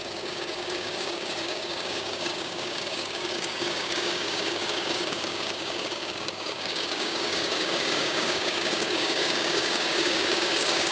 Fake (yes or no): yes